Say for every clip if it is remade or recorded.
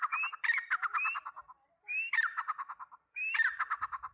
remade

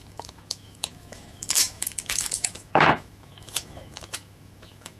remade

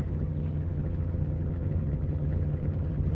remade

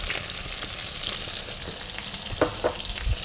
recorded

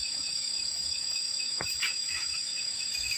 remade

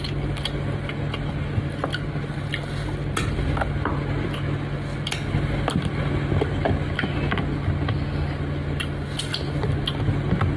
recorded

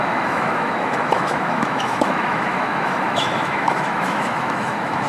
remade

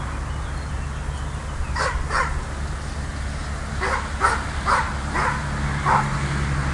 recorded